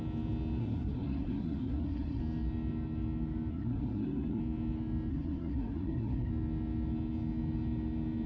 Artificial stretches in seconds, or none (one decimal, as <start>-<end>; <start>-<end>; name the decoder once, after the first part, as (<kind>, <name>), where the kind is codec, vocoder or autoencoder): 0.6-2.2 (codec, SNAC); 3.5-4.4; 5.1-6.3